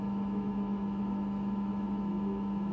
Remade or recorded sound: remade